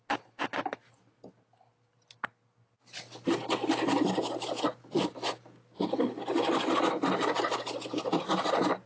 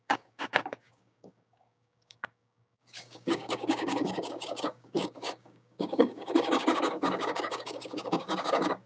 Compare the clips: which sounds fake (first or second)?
second